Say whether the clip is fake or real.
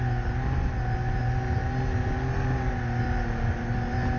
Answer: real